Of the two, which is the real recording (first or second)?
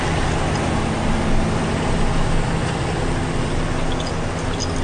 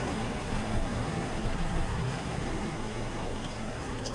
first